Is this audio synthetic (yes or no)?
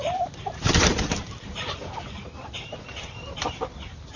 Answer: yes